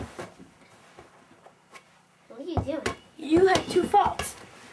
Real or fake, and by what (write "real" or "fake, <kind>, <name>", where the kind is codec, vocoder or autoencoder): real